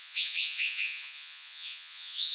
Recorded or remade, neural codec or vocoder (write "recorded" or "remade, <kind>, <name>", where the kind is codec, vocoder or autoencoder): remade, vocoder, Vocos